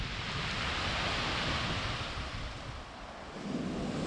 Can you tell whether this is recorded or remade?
remade